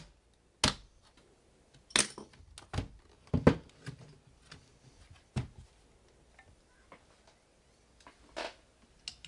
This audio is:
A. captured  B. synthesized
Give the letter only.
A